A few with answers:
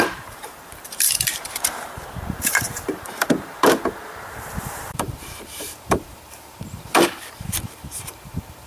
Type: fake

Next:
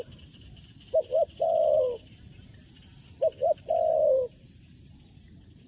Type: fake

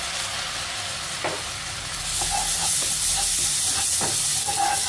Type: real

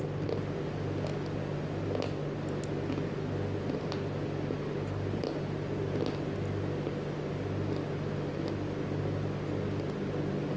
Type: real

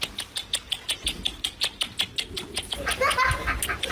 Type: real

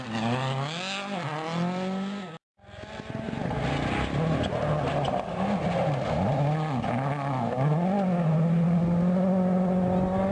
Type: real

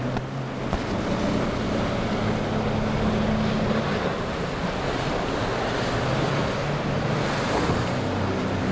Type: real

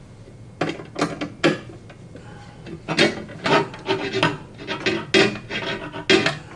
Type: real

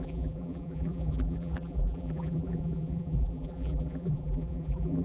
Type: fake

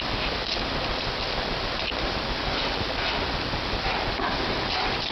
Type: fake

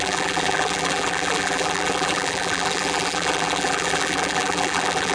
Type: fake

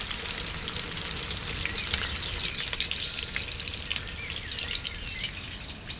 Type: real